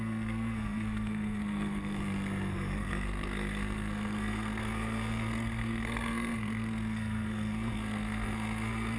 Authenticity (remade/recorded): remade